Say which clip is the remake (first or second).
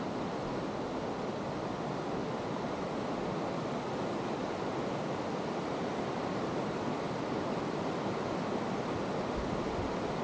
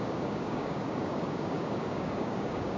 second